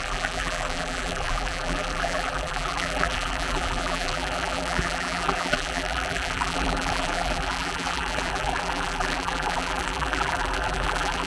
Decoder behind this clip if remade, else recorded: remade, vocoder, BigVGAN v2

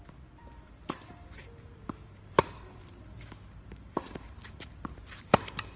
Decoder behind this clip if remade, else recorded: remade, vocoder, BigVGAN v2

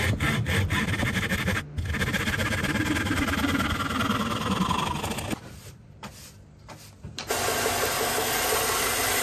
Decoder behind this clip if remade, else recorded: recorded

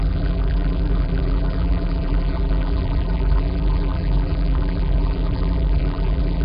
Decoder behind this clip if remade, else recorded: remade, vocoder, BigVGAN v2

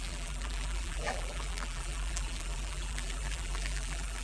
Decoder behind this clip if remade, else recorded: remade, vocoder, BigVGAN v2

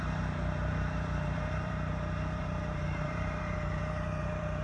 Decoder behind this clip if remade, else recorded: remade, vocoder, BigVGAN v2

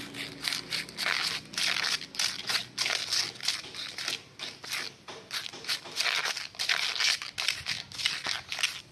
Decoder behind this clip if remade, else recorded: recorded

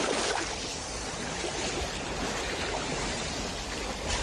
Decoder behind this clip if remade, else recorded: recorded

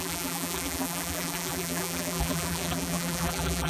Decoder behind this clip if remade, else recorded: remade, vocoder, BigVGAN v2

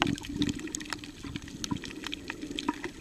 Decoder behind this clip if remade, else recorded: recorded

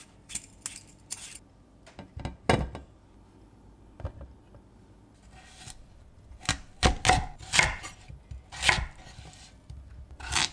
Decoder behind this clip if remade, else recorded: recorded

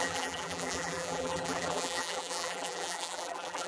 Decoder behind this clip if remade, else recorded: remade, vocoder, BigVGAN v2